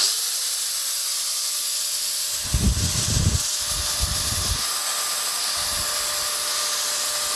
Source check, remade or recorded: recorded